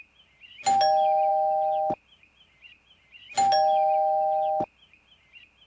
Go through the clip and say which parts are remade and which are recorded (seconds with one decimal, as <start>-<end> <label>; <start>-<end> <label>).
0.0-5.7 recorded